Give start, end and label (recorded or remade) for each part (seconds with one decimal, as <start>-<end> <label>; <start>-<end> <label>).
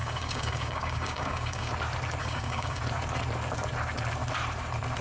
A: 0.0-1.7 remade; 1.7-2.2 recorded; 2.2-2.8 remade; 2.8-5.0 recorded